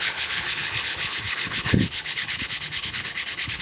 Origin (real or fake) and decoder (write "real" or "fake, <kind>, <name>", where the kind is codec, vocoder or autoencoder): fake, codec, HILCodec